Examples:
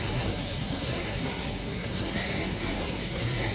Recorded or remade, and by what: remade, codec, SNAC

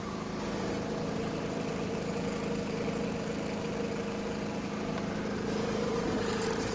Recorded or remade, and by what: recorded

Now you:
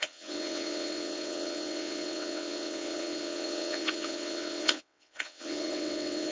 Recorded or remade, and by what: remade, vocoder, WaveNeXt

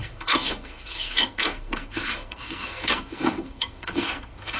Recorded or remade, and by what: remade, codec, SNAC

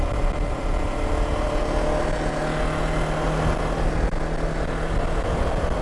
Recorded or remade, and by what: recorded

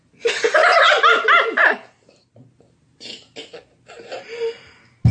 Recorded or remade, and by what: recorded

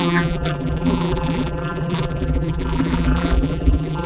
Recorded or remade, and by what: remade, vocoder, BigVGAN v2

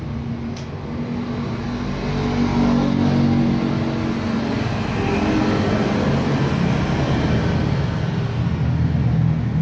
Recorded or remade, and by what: recorded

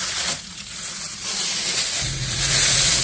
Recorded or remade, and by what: remade, vocoder, Vocos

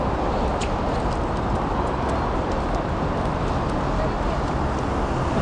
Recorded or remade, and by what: recorded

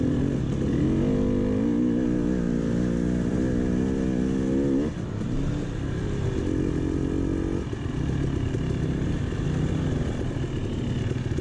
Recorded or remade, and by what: recorded